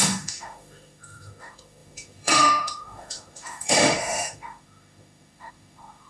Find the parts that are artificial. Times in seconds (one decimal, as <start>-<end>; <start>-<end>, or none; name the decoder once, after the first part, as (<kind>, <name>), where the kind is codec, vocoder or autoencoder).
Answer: 0.0-6.1 (autoencoder, DAC-VAE)